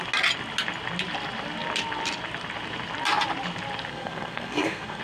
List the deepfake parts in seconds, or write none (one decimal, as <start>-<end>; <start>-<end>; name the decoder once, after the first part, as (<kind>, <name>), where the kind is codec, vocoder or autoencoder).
3.9-5.0 (codec, SNAC)

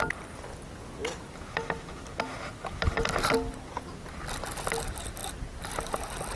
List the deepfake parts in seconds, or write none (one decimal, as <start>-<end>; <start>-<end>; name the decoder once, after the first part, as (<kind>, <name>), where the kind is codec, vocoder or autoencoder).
none